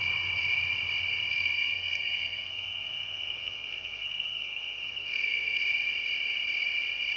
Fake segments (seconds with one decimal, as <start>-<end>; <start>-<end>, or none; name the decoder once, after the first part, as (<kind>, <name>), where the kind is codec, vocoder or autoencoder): 1.3-5.6 (codec, SNAC)